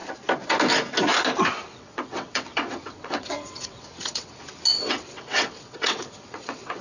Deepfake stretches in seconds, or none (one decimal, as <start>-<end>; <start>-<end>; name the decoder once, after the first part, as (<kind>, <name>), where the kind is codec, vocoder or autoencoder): 1.7-4.3 (vocoder, WaveNeXt); 4.7-6.8